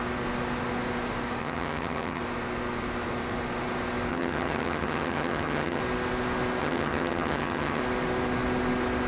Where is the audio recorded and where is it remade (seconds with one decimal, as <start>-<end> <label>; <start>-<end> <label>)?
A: 0.0-1.4 recorded; 1.4-2.2 remade; 2.2-4.1 recorded; 4.1-5.8 remade; 5.8-6.6 recorded; 6.6-7.8 remade; 7.8-9.1 recorded